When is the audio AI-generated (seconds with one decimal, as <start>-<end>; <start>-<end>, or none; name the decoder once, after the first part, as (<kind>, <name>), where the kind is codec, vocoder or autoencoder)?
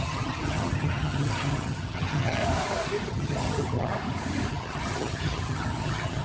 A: 0.0-2.4 (vocoder, HiFi-GAN); 3.1-3.9; 4.5-6.2